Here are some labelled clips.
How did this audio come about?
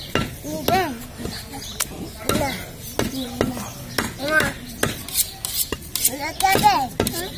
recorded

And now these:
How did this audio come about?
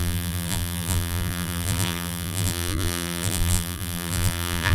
remade